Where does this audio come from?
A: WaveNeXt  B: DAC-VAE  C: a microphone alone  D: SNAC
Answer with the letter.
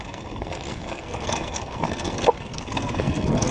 D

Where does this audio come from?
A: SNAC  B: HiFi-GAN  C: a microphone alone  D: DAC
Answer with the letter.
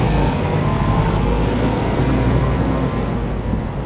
A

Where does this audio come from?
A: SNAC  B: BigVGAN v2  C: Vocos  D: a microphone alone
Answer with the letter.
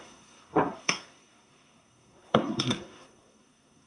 A